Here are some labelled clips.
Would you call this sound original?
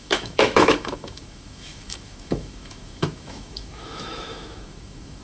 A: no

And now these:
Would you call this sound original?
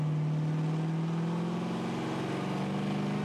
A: yes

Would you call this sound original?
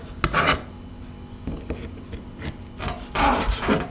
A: yes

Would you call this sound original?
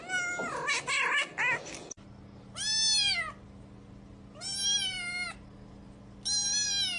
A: yes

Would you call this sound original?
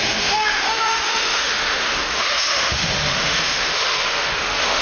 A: no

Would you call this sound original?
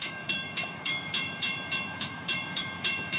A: no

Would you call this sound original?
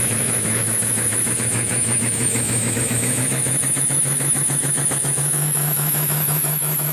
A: no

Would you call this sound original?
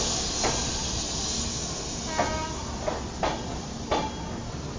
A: yes